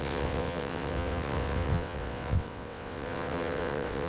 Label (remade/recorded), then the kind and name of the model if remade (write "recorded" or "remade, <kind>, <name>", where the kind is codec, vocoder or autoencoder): remade, vocoder, WaveNeXt